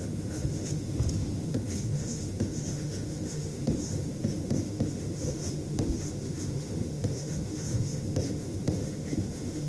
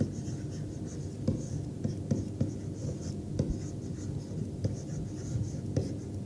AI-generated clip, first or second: first